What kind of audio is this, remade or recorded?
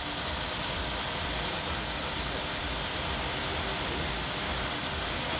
recorded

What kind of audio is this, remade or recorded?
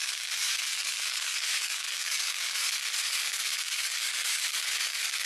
remade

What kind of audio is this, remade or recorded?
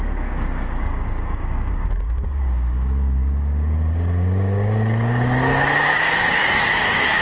remade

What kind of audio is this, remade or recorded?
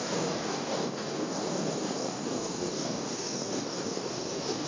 remade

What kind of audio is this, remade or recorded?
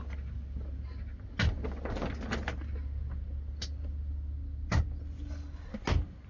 recorded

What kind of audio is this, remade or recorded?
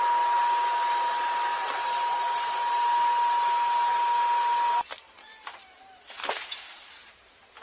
recorded